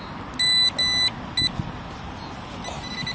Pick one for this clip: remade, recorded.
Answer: recorded